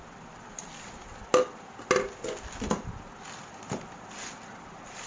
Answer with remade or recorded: recorded